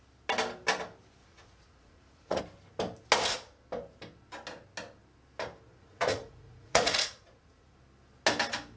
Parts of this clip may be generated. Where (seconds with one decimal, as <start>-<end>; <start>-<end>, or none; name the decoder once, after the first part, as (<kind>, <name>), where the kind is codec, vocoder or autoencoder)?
1.2-2.4 (vocoder, Vocos); 5.7-7.8